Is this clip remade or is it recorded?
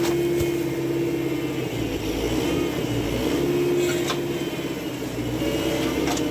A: recorded